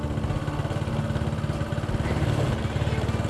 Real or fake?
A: real